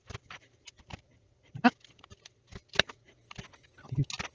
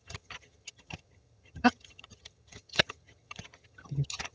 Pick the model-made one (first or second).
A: second